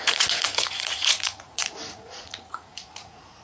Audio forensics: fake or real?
fake